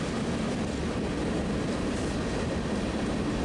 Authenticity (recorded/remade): recorded